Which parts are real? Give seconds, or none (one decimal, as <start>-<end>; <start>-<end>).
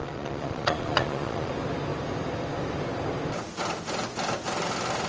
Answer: 1.5-5.1